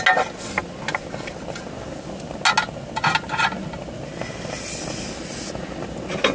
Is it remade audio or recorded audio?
recorded